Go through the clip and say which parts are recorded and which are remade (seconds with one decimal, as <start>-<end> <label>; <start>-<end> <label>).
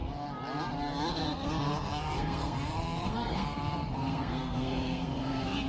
0.0-1.1 recorded; 1.1-5.7 remade